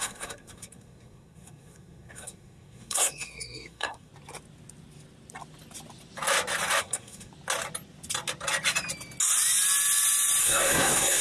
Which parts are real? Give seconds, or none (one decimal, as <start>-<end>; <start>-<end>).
4.1-6.8; 7.3-10.4